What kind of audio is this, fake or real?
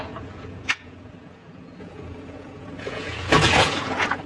fake